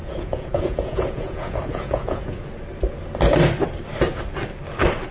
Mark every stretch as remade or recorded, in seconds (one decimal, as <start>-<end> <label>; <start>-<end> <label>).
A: 0.0-2.5 remade; 2.5-5.1 recorded